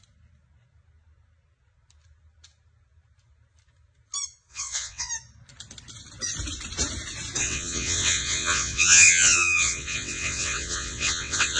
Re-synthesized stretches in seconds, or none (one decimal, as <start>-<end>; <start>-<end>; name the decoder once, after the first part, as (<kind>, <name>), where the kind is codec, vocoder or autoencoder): 4.5-5.1 (vocoder, WaveNeXt); 7.4-11.6